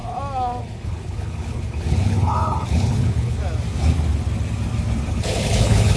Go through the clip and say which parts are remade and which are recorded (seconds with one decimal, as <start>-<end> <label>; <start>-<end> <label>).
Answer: 0.0-0.6 recorded; 0.6-3.4 remade; 3.4-5.1 recorded; 5.1-6.0 remade